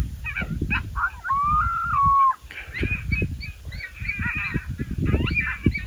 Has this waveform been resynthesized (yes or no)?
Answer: no